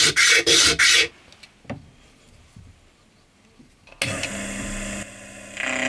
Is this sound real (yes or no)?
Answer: yes